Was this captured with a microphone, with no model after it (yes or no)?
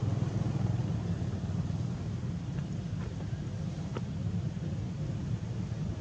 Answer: no